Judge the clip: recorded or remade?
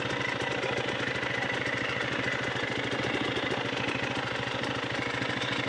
recorded